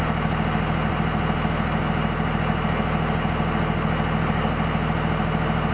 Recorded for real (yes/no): yes